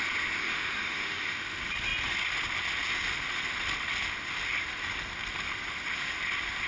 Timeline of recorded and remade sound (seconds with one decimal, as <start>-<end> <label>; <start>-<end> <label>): 0.0-0.4 recorded; 0.4-1.3 remade; 1.3-6.7 recorded